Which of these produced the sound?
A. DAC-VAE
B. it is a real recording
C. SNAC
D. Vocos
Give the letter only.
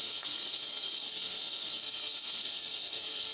C